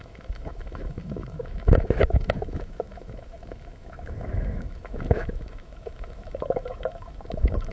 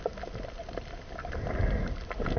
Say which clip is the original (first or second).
second